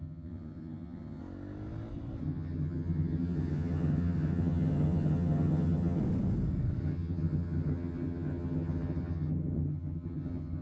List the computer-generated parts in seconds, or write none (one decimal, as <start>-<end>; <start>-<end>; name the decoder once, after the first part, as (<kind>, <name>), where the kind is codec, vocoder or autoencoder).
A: 0.0-1.2 (vocoder, HiFi-GAN); 2.2-6.0; 6.8-10.6